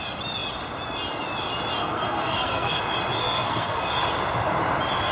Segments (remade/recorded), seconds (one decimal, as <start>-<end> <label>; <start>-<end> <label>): 0.0-1.8 recorded; 1.8-2.8 remade; 2.8-3.2 recorded; 3.2-3.9 remade; 3.9-5.1 recorded